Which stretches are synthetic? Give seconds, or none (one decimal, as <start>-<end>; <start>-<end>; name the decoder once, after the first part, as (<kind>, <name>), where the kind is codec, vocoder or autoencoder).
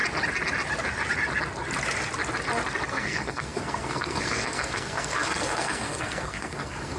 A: 2.9-7.0 (codec, SNAC)